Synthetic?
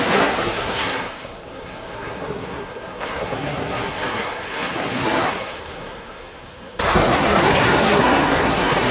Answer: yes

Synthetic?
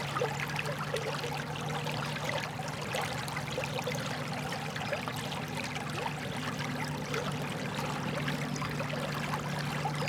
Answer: no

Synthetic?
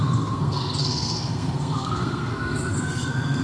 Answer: yes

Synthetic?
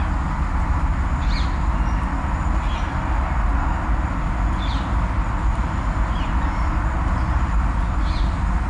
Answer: no